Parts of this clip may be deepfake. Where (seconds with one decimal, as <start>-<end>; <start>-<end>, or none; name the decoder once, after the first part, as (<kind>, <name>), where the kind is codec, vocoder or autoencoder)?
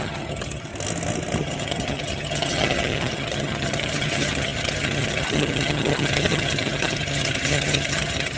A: 0.0-0.7 (vocoder, HiFi-GAN); 1.4-8.4